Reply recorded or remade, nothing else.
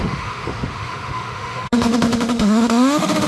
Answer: remade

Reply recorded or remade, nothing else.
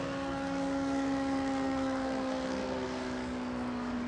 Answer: remade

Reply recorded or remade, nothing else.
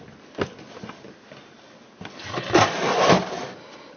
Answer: recorded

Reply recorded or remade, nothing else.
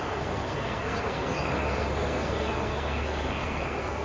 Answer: remade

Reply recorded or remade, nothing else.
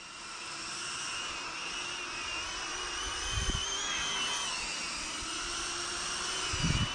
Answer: recorded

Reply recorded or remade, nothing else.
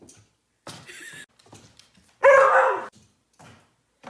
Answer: recorded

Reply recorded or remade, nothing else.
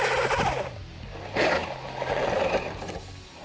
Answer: recorded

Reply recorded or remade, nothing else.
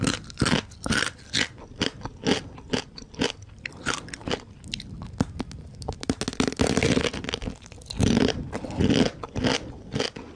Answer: recorded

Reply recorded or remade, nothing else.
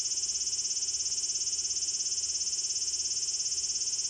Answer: recorded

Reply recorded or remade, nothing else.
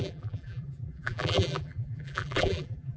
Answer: remade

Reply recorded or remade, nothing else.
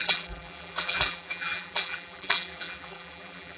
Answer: remade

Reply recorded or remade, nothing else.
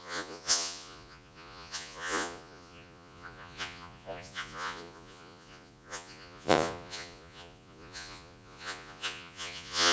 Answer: remade